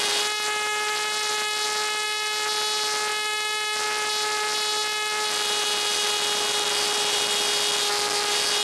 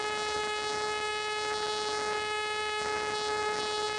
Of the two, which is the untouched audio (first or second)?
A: first